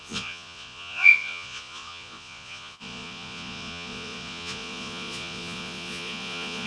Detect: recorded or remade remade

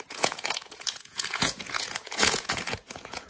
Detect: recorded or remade remade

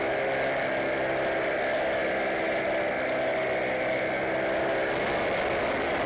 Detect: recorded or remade recorded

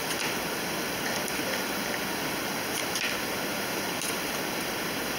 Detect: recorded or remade recorded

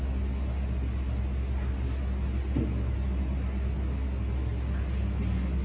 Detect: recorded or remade recorded